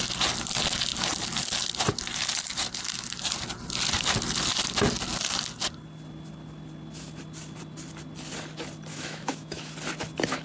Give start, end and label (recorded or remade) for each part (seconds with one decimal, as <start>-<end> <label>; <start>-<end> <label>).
0.0-8.9 recorded; 8.9-9.7 remade; 9.7-10.4 recorded